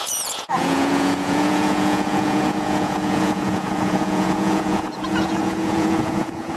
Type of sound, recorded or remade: remade